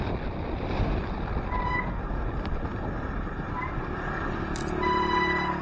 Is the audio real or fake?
real